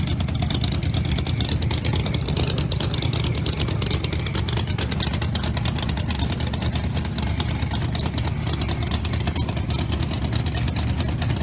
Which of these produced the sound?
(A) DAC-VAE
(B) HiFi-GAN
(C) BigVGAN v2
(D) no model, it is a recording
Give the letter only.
D